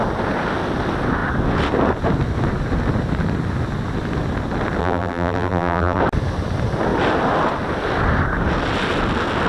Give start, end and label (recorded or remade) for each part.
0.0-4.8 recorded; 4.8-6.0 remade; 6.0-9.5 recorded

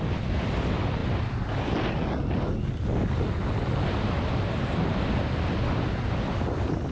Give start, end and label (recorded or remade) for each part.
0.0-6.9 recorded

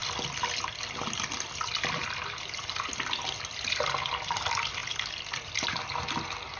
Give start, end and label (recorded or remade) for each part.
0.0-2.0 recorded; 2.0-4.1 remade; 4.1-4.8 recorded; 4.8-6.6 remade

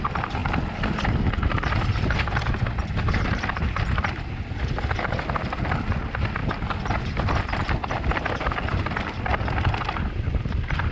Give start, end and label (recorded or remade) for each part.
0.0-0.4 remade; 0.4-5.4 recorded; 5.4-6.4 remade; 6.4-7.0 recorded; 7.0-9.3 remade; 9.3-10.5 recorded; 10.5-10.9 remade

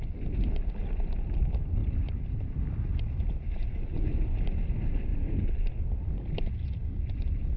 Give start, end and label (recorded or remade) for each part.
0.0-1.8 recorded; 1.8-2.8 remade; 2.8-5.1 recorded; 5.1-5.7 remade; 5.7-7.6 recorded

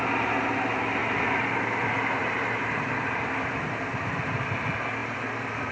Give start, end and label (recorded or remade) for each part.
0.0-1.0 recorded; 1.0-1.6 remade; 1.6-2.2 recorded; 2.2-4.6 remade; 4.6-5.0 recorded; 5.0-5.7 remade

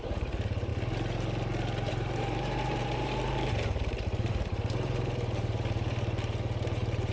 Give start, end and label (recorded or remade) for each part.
0.0-0.7 remade; 0.7-1.9 recorded; 1.9-7.1 remade